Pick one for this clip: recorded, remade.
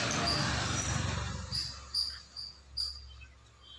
recorded